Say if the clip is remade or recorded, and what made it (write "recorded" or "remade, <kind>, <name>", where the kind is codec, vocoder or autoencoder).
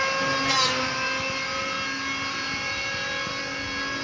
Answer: recorded